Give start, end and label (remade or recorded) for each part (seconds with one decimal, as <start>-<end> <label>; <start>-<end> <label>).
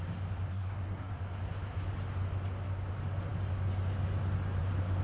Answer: 0.0-0.5 recorded; 0.5-1.1 remade; 1.1-5.0 recorded